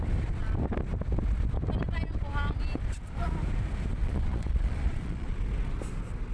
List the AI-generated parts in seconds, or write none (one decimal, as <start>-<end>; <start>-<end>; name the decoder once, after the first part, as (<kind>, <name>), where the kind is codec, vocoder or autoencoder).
4.0-5.4 (vocoder, Vocos)